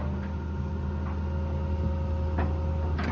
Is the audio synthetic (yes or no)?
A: no